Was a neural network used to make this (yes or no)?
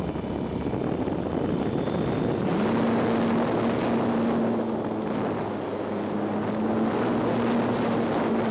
no